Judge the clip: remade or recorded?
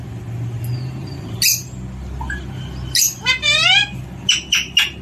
recorded